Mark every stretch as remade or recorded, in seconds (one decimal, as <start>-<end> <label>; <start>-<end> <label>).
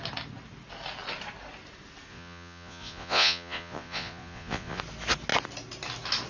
0.0-2.1 recorded; 2.1-4.8 remade; 4.8-6.3 recorded